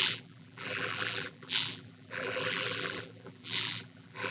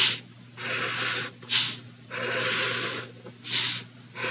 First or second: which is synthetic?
first